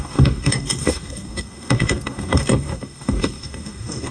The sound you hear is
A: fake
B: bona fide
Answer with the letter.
A